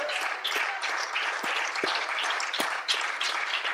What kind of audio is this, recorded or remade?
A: remade